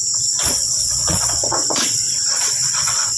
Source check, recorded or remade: remade